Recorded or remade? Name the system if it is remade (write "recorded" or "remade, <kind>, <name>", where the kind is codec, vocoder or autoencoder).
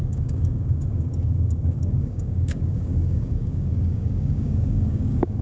remade, codec, DAC